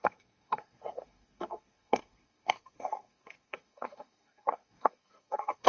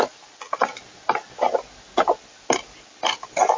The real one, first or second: second